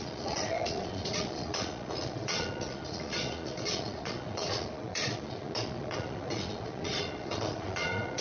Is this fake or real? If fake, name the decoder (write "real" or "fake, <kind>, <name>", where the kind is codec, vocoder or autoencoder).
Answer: fake, vocoder, Vocos